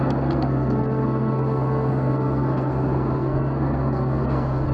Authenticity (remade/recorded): remade